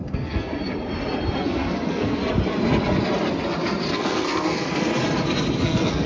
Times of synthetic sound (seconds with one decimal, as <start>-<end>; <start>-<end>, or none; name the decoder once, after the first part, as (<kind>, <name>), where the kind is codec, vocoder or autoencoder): 0.0-0.5 (codec, SNAC); 1.4-2.2; 3.9-4.9; 5.6-6.1

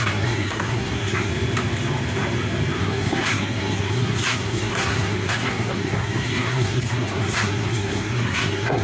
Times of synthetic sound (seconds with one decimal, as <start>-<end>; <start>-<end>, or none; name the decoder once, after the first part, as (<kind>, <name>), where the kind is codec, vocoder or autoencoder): 0.0-1.3 (codec, SNAC); 2.8-8.8

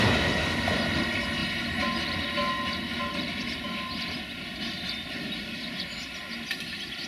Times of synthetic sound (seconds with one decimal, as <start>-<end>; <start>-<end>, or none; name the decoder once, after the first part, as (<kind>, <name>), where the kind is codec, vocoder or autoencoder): none